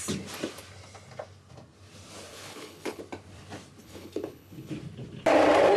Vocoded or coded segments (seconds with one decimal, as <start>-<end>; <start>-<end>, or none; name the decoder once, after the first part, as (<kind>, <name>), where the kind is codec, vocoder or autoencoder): 2.3-3.0 (codec, HILCodec); 3.8-4.7